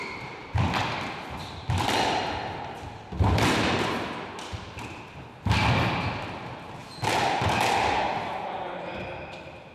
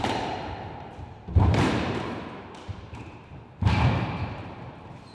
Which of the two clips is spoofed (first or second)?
second